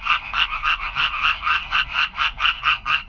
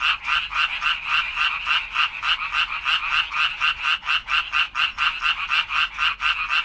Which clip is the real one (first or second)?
second